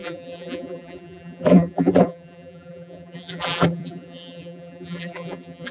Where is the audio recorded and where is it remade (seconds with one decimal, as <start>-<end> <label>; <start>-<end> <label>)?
0.0-5.7 remade